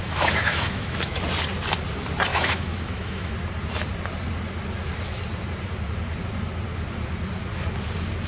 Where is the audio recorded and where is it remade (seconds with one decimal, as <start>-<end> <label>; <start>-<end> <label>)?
0.0-1.2 remade; 1.2-2.3 recorded; 2.3-3.3 remade; 3.3-8.3 recorded